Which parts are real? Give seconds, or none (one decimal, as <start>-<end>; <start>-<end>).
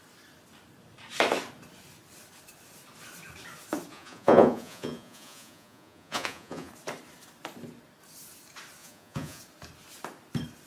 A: 0.0-3.9; 6.7-8.8; 9.4-10.7